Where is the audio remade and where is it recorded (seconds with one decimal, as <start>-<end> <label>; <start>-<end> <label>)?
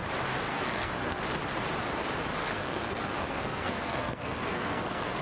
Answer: 0.0-0.5 recorded; 0.5-1.2 remade; 1.2-2.4 recorded; 2.4-5.2 remade